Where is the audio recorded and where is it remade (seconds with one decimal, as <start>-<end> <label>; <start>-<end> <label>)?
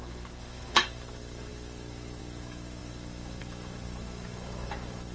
0.0-5.1 remade